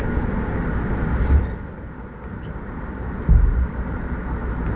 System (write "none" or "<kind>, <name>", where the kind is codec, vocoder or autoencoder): none